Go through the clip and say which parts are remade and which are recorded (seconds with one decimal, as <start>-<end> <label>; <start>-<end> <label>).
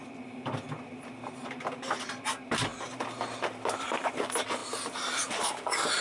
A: 0.0-6.0 recorded